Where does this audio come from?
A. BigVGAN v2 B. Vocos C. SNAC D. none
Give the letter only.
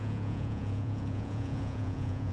B